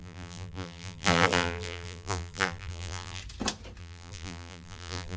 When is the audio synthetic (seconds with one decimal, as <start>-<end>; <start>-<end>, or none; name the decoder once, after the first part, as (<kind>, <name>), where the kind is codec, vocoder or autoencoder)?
0.0-3.2 (vocoder, BigVGAN v2); 3.8-5.2